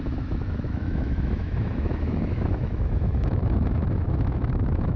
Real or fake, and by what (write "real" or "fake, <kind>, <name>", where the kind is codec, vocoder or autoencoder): fake, autoencoder, DAC-VAE